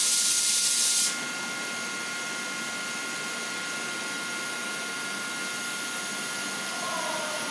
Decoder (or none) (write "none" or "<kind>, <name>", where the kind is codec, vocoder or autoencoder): none